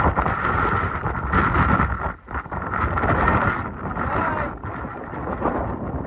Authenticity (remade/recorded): recorded